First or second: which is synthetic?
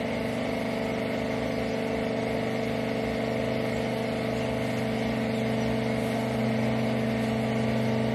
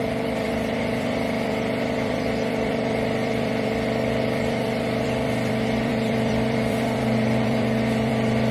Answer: second